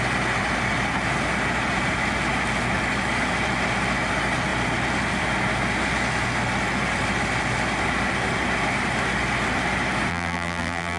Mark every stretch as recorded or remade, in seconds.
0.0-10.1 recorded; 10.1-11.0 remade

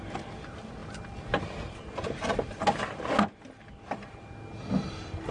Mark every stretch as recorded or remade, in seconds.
0.0-5.3 recorded

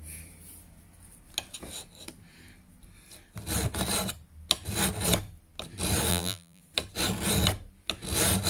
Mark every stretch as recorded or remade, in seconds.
0.0-6.1 recorded; 6.1-6.6 remade; 6.6-8.5 recorded

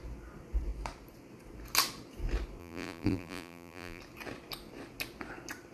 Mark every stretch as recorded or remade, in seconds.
0.0-2.6 recorded; 2.6-4.0 remade; 4.0-5.7 recorded

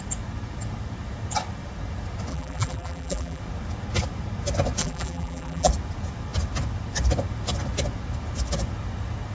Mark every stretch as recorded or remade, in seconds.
0.0-2.3 recorded; 2.3-3.4 remade; 3.4-4.8 recorded; 4.8-5.7 remade; 5.7-9.3 recorded

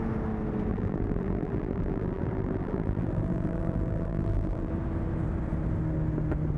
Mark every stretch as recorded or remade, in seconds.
0.0-0.7 recorded; 0.7-4.7 remade; 4.7-6.6 recorded

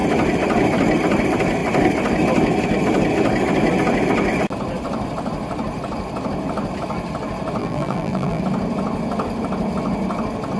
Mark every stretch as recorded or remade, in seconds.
0.0-7.6 recorded; 7.6-8.4 remade; 8.4-10.6 recorded